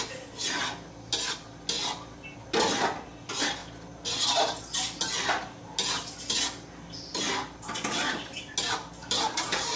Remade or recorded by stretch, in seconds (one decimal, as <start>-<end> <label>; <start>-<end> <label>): 0.0-9.0 recorded; 9.0-9.8 remade

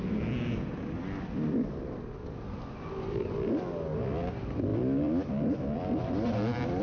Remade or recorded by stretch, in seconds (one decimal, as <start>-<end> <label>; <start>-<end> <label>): 0.0-4.7 recorded; 4.7-6.8 remade

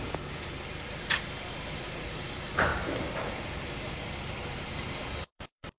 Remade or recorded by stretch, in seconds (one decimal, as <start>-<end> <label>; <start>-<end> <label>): 0.0-5.8 remade

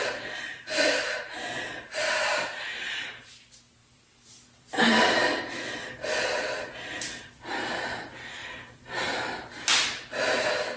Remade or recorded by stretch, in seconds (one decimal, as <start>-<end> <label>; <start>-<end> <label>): 0.0-3.8 recorded; 3.8-7.4 remade; 7.4-8.4 recorded; 8.4-9.1 remade; 9.1-10.8 recorded

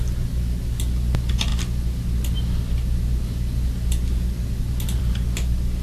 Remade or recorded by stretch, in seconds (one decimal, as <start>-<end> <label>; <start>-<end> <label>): 0.0-5.8 recorded